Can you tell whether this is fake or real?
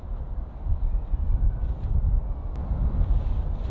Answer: real